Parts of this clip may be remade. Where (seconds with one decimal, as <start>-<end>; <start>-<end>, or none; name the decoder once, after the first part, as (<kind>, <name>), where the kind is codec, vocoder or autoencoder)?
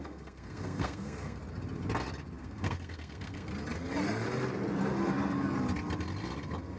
0.0-1.4 (codec, SNAC); 2.4-3.5